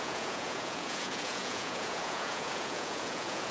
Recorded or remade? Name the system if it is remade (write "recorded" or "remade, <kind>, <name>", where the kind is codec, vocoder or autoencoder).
remade, vocoder, Vocos